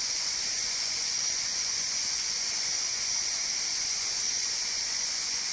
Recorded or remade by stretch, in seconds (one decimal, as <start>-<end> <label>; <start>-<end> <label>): 0.0-5.5 remade